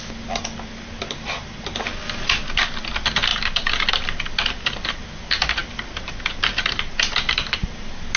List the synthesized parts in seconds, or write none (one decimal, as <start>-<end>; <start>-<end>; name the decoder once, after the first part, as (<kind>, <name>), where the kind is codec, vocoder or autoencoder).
none